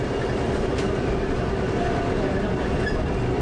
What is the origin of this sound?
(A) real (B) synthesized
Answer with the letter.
B